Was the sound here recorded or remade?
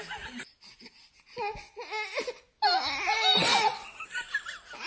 recorded